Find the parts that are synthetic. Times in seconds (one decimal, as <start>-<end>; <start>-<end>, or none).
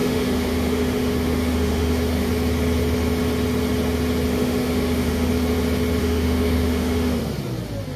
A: 0.0-2.3; 4.3-5.3; 6.0-7.2